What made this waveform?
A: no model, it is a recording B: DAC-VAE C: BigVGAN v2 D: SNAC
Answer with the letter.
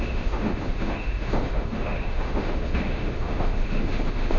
B